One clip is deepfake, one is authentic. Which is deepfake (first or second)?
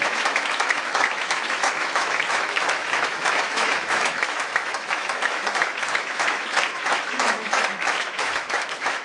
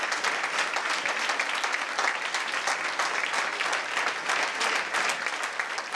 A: first